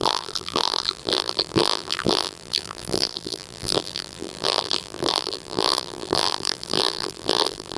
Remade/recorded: remade